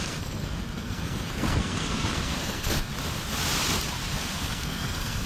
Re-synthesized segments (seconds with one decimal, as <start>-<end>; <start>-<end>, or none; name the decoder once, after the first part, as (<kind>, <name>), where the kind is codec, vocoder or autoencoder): 0.0-2.9 (codec, SNAC); 4.1-5.3